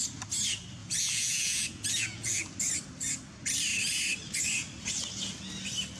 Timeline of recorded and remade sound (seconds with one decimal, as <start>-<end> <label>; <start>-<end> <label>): 0.0-0.8 recorded; 0.8-2.5 remade; 2.5-6.0 recorded